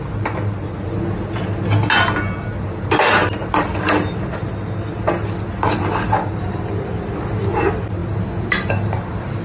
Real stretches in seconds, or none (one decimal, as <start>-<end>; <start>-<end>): 0.0-9.4